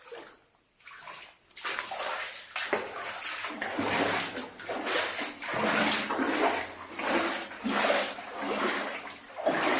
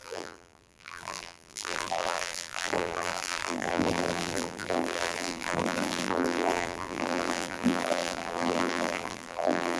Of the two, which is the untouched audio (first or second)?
first